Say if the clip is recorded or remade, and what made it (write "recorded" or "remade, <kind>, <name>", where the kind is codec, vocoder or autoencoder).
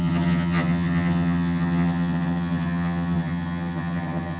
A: remade, vocoder, HiFi-GAN